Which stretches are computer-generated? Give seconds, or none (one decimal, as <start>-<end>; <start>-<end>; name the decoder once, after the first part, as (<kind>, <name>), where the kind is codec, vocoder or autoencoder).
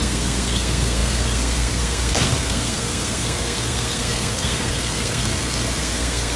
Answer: 0.0-6.4 (codec, SNAC)